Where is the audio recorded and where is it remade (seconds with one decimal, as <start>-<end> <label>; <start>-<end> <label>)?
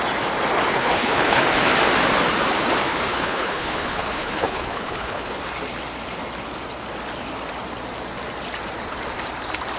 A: 0.0-0.7 recorded; 0.7-1.4 remade; 1.4-2.9 recorded; 2.9-5.4 remade; 5.4-9.8 recorded